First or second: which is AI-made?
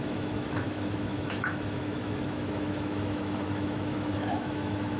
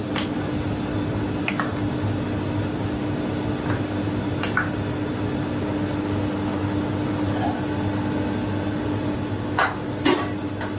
first